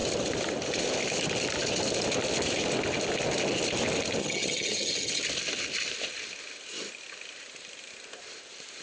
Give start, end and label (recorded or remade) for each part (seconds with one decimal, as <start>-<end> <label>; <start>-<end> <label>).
0.0-4.2 recorded; 4.2-5.2 remade; 5.2-8.8 recorded